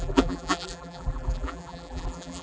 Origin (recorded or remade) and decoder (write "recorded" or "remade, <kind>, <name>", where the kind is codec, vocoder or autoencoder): remade, vocoder, BigVGAN v2